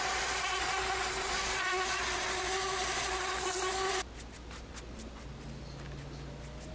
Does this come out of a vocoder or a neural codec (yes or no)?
no